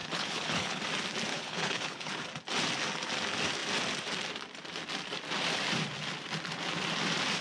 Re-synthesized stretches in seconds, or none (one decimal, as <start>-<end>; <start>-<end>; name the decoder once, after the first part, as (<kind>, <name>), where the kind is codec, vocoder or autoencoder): 0.0-0.8 (codec, HILCodec); 1.3-2.1